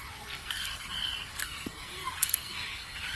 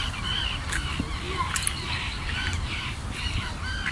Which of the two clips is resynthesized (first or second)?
first